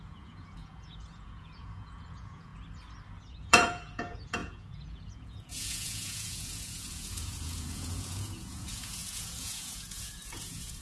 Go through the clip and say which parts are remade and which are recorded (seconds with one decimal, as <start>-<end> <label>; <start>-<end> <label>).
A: 0.0-2.5 remade; 2.5-3.2 recorded; 3.2-10.8 remade

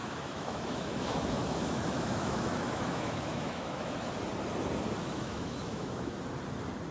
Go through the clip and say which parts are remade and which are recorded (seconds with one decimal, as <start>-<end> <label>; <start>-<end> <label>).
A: 0.0-4.1 remade; 4.1-5.0 recorded; 5.0-6.2 remade; 6.2-6.9 recorded

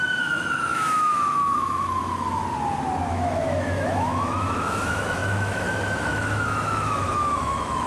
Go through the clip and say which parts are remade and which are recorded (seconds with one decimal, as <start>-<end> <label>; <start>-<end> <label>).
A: 0.0-2.4 remade; 2.4-3.1 recorded; 3.1-7.9 remade

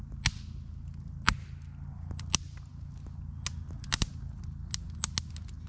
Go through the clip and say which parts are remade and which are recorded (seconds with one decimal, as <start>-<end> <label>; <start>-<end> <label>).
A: 0.0-5.7 recorded

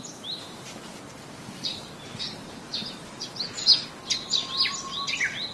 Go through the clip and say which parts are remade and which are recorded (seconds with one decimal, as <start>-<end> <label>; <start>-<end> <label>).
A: 0.0-5.5 recorded

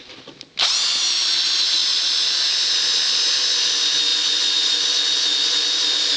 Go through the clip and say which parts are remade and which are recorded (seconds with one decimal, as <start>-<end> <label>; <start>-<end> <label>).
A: 0.0-4.1 recorded; 4.1-4.8 remade; 4.8-6.2 recorded